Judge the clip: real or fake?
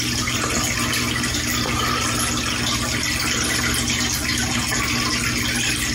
real